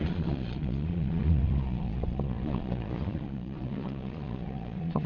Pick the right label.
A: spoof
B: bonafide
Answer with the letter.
A